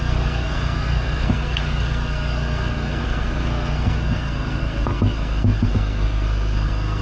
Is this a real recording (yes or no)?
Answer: no